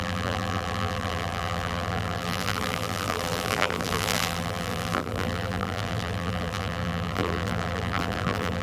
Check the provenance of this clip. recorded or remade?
remade